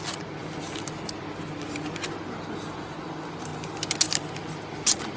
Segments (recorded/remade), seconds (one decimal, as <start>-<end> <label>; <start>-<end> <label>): 0.0-5.2 recorded